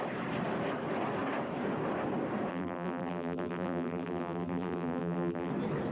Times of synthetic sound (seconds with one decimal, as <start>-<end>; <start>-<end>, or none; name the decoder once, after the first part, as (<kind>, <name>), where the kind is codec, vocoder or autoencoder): 2.5-5.5 (vocoder, BigVGAN v2)